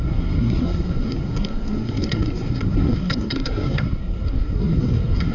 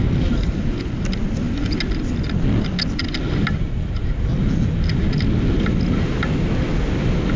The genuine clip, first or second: second